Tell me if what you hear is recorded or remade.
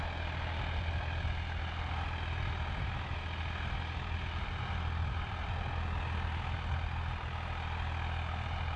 recorded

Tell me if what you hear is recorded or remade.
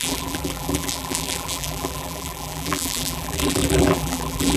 remade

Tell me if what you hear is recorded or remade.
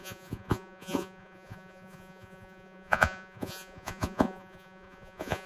remade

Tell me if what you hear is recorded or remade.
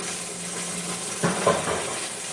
recorded